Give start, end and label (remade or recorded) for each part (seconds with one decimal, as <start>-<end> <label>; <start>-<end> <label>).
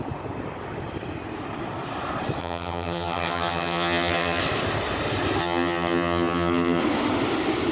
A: 0.0-2.4 recorded; 2.4-4.4 remade; 4.4-5.4 recorded; 5.4-6.8 remade; 6.8-7.7 recorded